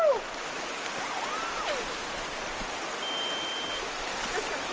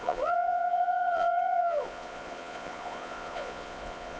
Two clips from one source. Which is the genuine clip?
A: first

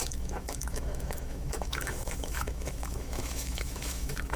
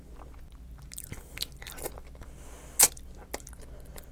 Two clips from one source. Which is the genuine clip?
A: second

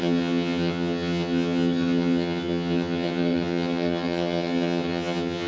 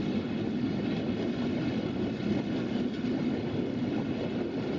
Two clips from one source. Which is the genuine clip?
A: second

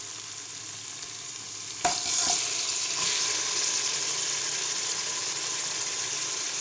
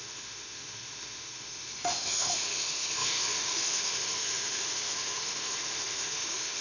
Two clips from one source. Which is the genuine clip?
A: first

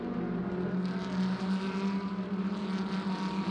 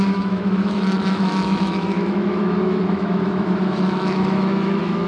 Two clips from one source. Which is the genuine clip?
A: first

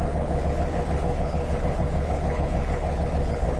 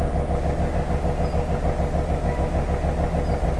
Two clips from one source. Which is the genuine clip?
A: second